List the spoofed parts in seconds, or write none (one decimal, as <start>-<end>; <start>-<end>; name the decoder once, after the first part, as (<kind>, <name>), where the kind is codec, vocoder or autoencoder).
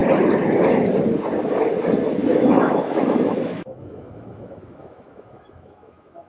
2.2-6.3 (autoencoder, DAC-VAE)